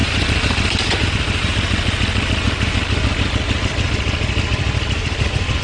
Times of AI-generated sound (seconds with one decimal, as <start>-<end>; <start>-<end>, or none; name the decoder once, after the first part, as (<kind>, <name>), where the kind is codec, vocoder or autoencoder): 0.0-1.1 (vocoder, BigVGAN v2)